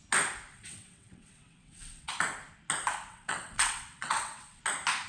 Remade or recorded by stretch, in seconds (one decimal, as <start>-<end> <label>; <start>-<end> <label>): 0.0-0.5 recorded; 0.5-2.1 remade; 2.1-3.1 recorded; 3.1-4.6 remade; 4.6-5.1 recorded